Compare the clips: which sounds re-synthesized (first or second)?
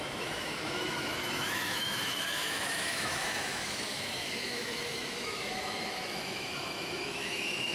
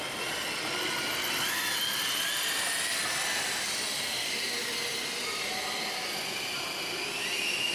first